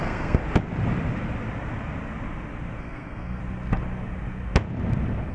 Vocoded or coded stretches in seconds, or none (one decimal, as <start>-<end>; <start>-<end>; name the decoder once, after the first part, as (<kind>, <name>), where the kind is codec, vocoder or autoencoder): 0.0-0.4 (codec, SNAC); 2.8-3.4